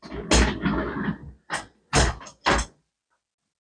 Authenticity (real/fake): real